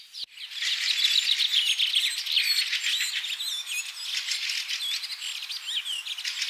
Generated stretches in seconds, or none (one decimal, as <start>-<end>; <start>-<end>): none